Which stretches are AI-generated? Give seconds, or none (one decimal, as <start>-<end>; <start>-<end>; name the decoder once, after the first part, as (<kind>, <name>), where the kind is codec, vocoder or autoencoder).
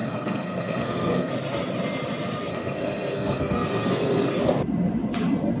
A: 0.0-1.3 (codec, SNAC); 2.5-4.4